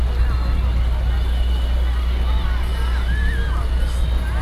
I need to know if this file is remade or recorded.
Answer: recorded